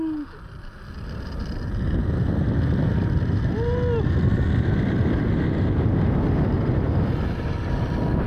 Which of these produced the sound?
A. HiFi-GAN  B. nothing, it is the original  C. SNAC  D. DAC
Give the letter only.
B